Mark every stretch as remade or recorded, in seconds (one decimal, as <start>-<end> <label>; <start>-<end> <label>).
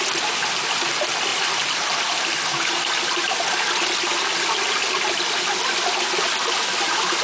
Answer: 0.0-7.2 recorded